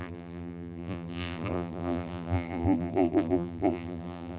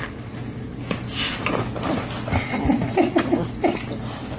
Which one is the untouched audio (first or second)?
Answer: second